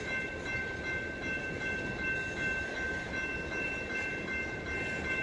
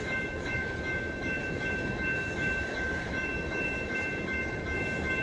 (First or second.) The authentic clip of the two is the first